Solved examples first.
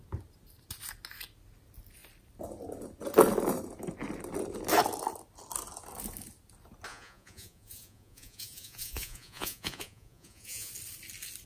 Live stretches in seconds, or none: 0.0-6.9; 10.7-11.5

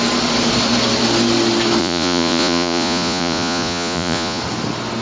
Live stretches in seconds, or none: 0.0-1.8; 4.4-5.0

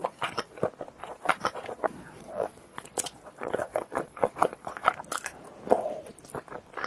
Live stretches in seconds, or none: 0.6-1.0; 4.9-6.9

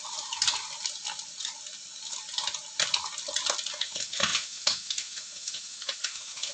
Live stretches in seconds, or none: 0.0-3.8